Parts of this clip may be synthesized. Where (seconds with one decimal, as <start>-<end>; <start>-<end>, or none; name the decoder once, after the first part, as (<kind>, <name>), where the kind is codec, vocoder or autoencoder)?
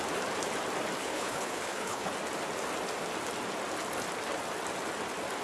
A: 1.0-2.1 (codec, HILCodec)